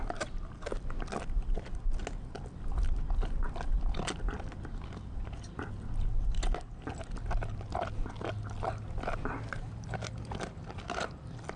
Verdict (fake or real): real